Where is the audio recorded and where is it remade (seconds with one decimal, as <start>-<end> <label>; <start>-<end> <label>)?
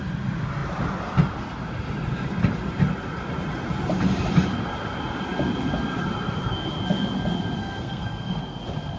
0.0-7.6 recorded; 7.6-8.4 remade; 8.4-9.0 recorded